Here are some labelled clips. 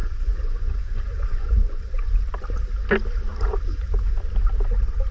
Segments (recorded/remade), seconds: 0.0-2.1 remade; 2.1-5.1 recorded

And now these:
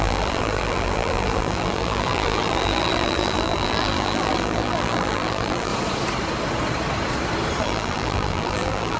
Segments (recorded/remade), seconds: 0.0-5.7 remade; 5.7-7.6 recorded; 7.6-9.0 remade

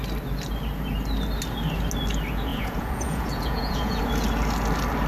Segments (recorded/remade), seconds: 0.0-2.5 recorded; 2.5-4.0 remade; 4.0-5.1 recorded

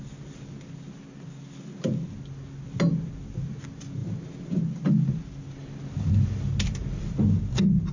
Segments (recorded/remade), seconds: 0.0-7.9 recorded

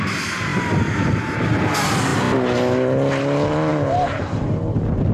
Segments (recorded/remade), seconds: 0.0-3.7 recorded; 3.7-4.6 remade; 4.6-5.1 recorded

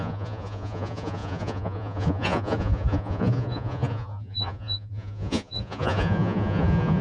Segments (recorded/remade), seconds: 0.0-7.0 remade